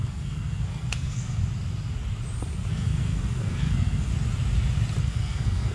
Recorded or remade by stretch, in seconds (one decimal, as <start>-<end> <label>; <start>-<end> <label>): 0.0-1.4 remade; 1.4-2.7 recorded; 2.7-4.1 remade; 4.1-5.0 recorded; 5.0-5.7 remade